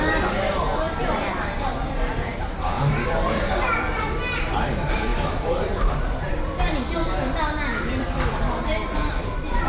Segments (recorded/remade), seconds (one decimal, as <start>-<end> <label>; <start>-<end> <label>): 0.0-6.3 remade; 6.3-7.9 recorded; 7.9-9.7 remade